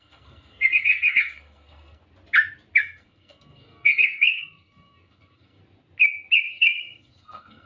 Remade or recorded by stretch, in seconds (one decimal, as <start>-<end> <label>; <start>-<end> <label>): 0.0-2.0 remade; 2.0-2.8 recorded; 2.8-5.6 remade; 5.6-6.4 recorded; 6.4-7.7 remade